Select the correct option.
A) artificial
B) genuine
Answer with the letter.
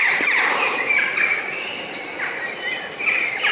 A